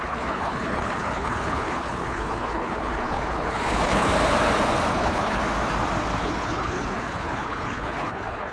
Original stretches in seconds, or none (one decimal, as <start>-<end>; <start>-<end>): 4.1-4.9; 5.4-6.2